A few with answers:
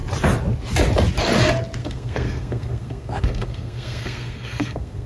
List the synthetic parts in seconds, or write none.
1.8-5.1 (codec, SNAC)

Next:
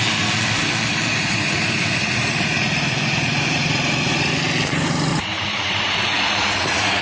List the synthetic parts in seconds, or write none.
1.1-4.3 (vocoder, Vocos); 5.1-7.0

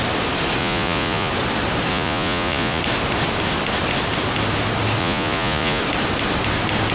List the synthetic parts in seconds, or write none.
0.6-1.3 (vocoder, Vocos); 1.9-2.8; 5.0-5.8

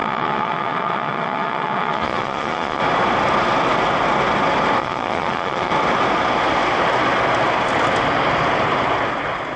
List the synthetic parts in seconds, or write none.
0.0-2.8 (vocoder, Vocos); 4.8-5.7